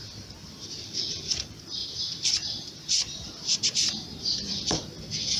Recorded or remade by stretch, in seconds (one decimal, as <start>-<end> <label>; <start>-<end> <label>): 0.0-1.8 recorded; 1.8-5.0 remade; 5.0-5.4 recorded